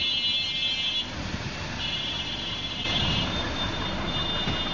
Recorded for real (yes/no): yes